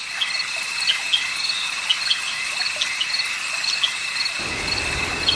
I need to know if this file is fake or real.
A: real